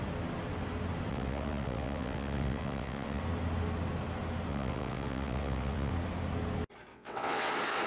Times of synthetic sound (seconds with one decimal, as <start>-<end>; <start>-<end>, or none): 1.1-3.2; 4.5-5.9; 6.9-7.5